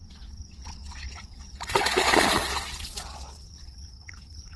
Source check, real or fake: fake